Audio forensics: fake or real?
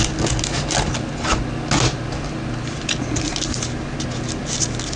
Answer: real